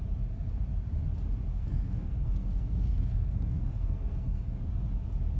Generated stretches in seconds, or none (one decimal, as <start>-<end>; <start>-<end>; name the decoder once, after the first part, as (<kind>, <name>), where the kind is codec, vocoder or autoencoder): 1.5-4.7 (codec, SNAC)